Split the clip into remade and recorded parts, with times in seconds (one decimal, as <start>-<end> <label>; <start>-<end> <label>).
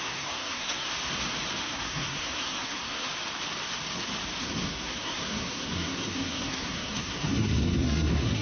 0.0-0.9 remade; 0.9-1.6 recorded; 1.6-3.1 remade; 3.1-4.4 recorded; 4.4-8.4 remade